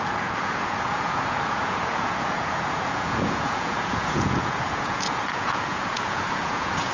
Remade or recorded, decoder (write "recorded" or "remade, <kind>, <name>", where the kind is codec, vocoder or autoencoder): remade, vocoder, Vocos